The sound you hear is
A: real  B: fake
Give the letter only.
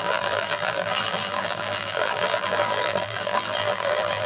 B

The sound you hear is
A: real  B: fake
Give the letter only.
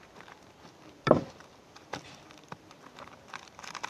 B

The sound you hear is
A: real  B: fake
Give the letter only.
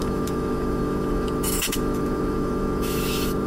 B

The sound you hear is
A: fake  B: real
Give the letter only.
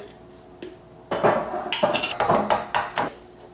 B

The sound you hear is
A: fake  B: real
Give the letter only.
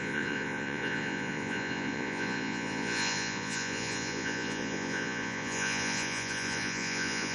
A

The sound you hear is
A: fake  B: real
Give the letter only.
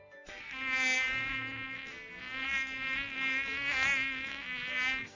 A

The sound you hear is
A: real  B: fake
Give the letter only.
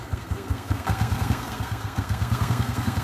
B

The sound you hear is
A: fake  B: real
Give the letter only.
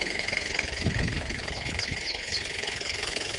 A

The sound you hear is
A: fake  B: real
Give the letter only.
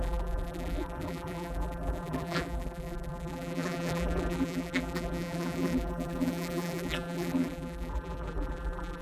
A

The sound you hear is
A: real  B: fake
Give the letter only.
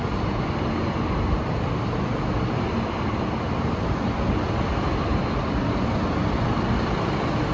A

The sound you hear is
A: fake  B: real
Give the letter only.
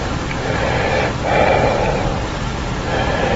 B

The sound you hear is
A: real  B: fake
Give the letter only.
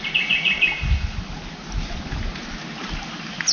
A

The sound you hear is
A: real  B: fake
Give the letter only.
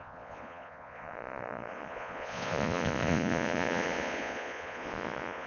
B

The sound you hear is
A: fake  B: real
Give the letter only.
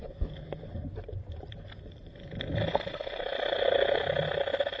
B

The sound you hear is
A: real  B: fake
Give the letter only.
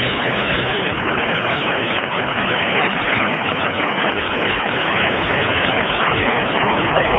B